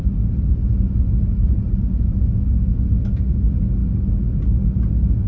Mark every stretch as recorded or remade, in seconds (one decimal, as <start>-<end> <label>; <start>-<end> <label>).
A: 0.0-0.6 recorded; 0.6-2.0 remade; 2.0-5.3 recorded